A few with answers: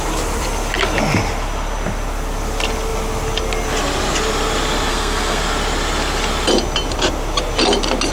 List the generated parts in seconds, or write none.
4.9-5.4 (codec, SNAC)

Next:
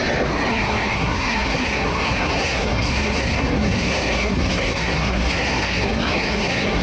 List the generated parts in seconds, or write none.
0.5-6.8 (codec, SNAC)

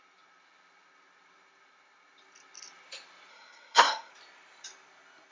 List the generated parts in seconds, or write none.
3.3-4.1 (codec, SNAC)